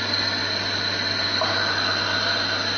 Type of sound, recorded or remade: recorded